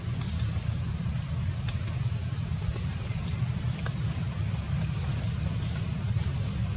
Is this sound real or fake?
fake